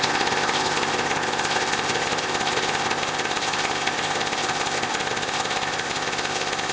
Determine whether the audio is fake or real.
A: fake